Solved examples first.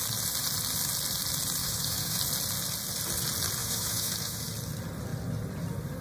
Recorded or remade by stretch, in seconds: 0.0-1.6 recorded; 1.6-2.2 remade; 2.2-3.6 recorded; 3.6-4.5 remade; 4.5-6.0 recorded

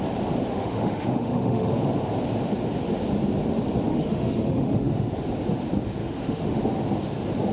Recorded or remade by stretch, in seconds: 0.0-0.5 recorded; 0.5-1.7 remade; 1.7-3.9 recorded; 3.9-5.2 remade; 5.2-6.0 recorded; 6.0-6.6 remade; 6.6-7.5 recorded

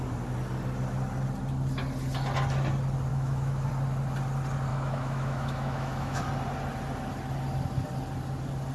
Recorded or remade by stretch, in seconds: 0.0-3.1 recorded; 3.1-3.7 remade; 3.7-4.7 recorded; 4.7-6.2 remade; 6.2-8.7 recorded

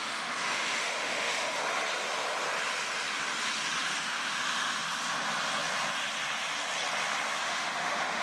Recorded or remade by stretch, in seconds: 0.0-1.6 remade; 1.6-4.0 recorded; 4.0-4.8 remade; 4.8-7.4 recorded; 7.4-8.2 remade

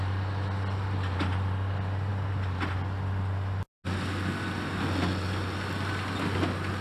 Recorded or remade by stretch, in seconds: 0.0-6.8 recorded

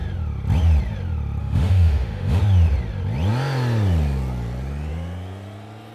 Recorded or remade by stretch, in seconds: 0.0-1.4 recorded; 1.4-2.4 remade; 2.4-5.9 recorded